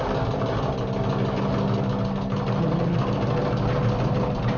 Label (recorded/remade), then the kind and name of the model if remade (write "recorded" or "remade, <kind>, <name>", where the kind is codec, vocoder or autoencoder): recorded